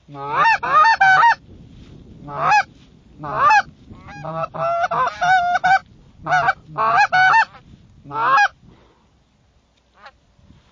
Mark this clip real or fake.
real